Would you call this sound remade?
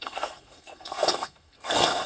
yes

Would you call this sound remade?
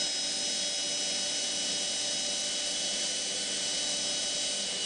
no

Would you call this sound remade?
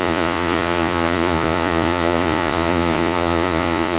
yes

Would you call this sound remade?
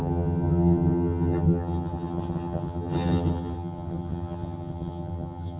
yes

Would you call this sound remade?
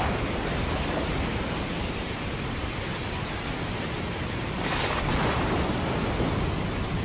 no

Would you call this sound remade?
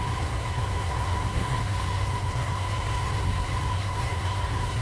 yes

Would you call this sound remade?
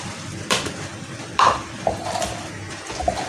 yes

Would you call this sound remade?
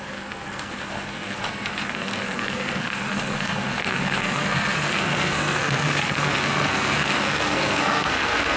yes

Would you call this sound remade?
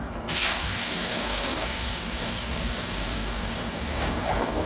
yes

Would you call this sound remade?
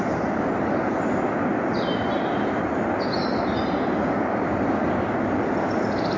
no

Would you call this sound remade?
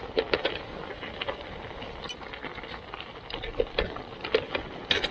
no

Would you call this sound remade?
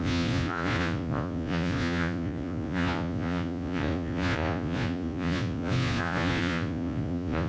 yes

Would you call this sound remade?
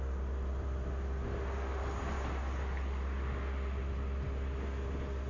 no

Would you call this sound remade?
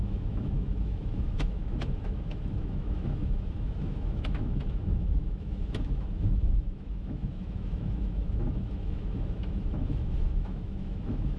yes